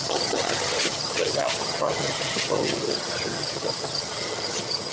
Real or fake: fake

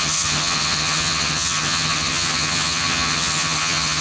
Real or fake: fake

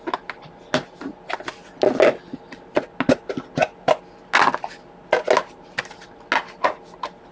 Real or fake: real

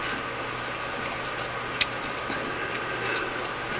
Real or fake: real